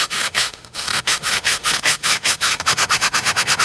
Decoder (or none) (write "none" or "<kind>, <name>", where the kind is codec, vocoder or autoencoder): autoencoder, DAC-VAE